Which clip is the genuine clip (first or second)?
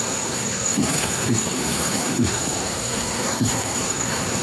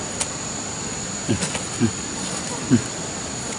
second